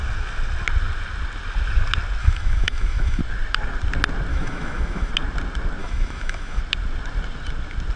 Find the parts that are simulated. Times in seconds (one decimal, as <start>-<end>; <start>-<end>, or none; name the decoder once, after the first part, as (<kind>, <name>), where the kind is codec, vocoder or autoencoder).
2.2-3.2 (autoencoder, DAC-VAE); 4.3-5.1; 5.8-6.6